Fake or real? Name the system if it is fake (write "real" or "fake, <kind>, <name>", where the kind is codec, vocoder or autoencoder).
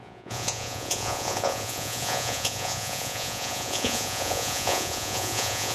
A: fake, vocoder, Vocos